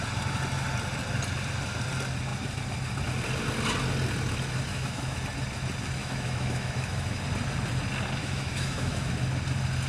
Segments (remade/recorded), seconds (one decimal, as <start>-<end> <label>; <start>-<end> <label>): 0.0-4.7 recorded; 4.7-5.2 remade; 5.2-6.0 recorded; 6.0-7.2 remade; 7.2-8.2 recorded; 8.2-9.1 remade; 9.1-9.9 recorded